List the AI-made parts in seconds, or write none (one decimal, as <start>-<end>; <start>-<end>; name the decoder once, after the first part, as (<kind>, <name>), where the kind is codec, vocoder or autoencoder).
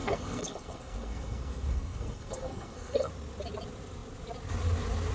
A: 0.0-3.1 (codec, SNAC)